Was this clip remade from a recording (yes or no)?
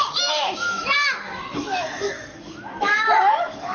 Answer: yes